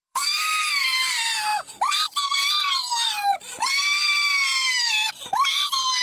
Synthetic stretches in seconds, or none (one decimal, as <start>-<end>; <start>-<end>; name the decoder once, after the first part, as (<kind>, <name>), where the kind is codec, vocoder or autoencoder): 0.0-0.6 (vocoder, BigVGAN v2); 1.5-5.1